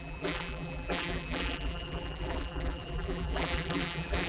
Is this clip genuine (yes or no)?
no